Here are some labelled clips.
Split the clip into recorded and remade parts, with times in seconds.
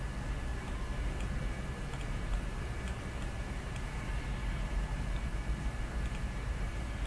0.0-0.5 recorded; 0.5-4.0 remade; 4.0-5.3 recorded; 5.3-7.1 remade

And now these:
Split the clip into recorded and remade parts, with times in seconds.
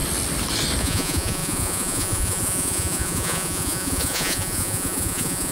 0.0-0.8 recorded; 0.8-5.5 remade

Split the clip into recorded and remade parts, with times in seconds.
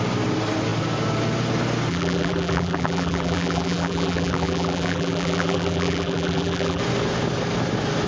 0.0-1.9 recorded; 1.9-6.8 remade; 6.8-8.1 recorded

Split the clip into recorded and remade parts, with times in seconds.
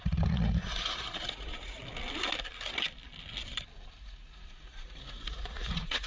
0.0-1.8 remade; 1.8-4.0 recorded; 4.0-6.1 remade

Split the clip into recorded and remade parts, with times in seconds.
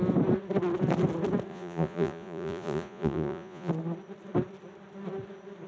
0.0-1.5 recorded; 1.5-3.7 remade; 3.7-5.7 recorded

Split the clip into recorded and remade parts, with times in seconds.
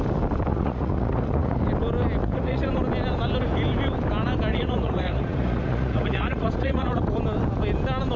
0.0-0.5 recorded; 0.5-1.6 remade; 1.6-2.2 recorded; 2.2-2.7 remade; 2.7-4.5 recorded; 4.5-7.0 remade; 7.0-8.2 recorded